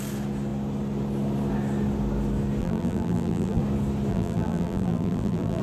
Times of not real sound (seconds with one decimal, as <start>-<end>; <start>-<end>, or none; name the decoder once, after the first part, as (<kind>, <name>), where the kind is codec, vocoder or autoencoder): 2.6-3.6 (vocoder, BigVGAN v2); 4.1-5.6